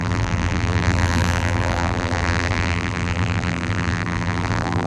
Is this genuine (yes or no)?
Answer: no